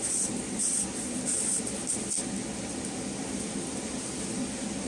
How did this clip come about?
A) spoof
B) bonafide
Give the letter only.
B